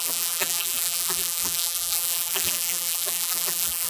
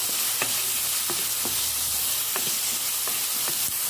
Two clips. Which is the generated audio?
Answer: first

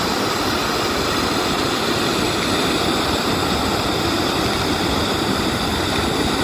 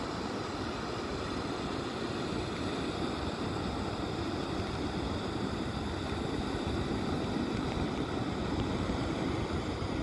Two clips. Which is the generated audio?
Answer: first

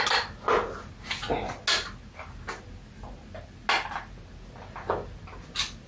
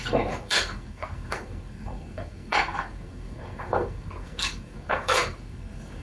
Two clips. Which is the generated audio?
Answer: second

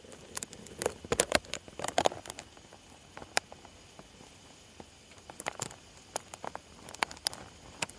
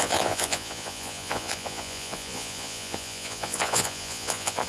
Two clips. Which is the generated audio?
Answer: second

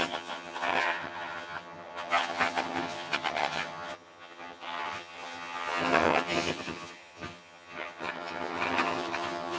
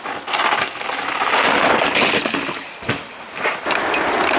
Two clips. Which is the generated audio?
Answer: first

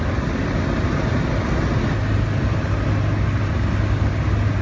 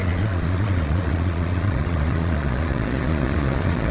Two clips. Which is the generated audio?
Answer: second